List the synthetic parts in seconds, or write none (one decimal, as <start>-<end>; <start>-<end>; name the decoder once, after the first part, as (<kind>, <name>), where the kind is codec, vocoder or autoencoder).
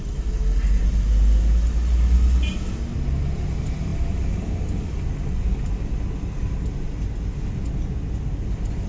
none